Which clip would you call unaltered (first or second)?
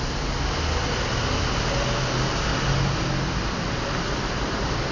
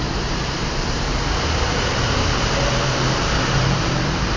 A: first